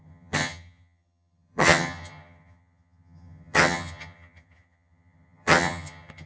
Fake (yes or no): yes